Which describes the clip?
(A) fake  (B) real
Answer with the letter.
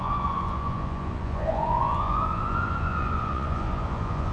A